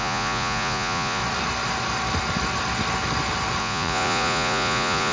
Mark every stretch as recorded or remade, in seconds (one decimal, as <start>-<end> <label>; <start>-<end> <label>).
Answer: 0.0-1.2 remade; 1.2-3.6 recorded; 3.6-5.1 remade